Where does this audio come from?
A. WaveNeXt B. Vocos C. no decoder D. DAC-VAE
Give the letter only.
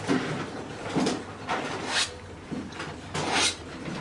C